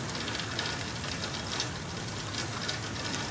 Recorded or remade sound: recorded